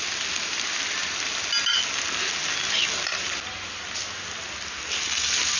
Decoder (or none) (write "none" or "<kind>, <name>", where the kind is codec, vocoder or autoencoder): none